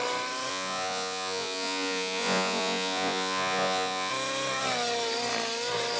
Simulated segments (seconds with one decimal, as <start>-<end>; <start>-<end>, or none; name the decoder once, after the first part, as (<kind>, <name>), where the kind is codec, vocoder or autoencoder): 0.5-4.1 (vocoder, Vocos)